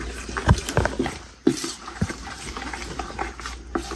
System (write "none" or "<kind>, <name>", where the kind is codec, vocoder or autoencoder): none